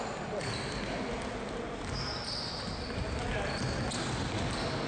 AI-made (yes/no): no